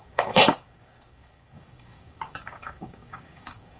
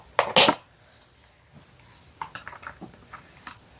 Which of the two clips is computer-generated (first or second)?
first